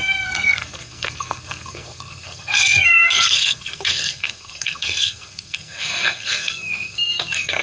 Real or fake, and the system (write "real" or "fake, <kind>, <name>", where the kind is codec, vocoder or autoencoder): fake, codec, SNAC